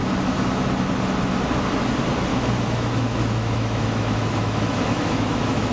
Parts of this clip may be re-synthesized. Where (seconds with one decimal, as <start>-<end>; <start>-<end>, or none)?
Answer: 2.3-5.7